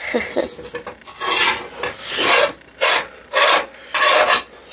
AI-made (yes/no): no